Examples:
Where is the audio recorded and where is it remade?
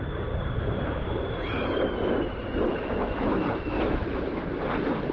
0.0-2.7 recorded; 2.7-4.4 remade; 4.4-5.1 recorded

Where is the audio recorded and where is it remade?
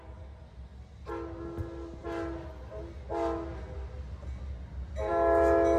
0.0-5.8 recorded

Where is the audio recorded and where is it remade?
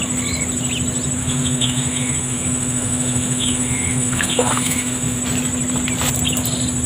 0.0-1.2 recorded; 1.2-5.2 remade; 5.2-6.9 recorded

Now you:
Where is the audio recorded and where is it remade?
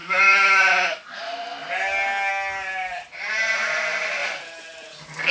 0.0-0.7 remade; 0.7-5.3 recorded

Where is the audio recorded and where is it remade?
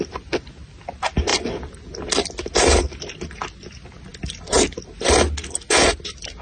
0.0-6.4 recorded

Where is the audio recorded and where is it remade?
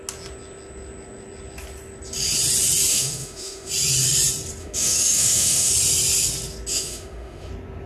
0.0-2.9 recorded; 2.9-3.7 remade; 3.7-4.6 recorded; 4.6-5.7 remade; 5.7-6.7 recorded; 6.7-7.5 remade; 7.5-7.9 recorded